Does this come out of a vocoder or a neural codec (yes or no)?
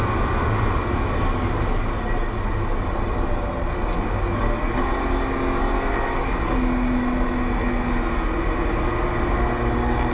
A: no